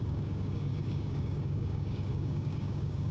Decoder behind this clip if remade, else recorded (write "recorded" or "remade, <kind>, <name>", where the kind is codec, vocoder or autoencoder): remade, codec, DAC